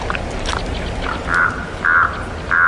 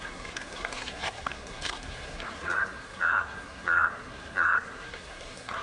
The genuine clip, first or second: first